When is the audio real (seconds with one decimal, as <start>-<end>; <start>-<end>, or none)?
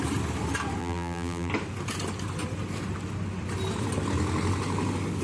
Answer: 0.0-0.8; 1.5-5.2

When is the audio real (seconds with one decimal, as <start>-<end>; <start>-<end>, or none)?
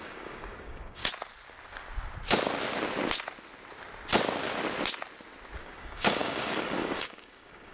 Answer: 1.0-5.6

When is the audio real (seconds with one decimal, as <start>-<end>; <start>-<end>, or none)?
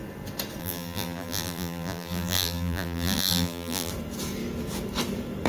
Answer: 0.0-0.6; 3.9-5.5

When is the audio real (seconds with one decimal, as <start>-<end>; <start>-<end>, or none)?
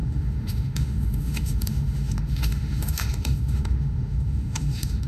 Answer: none